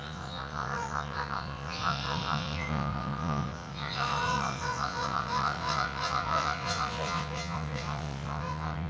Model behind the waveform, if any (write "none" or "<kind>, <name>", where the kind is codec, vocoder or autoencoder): vocoder, WaveNeXt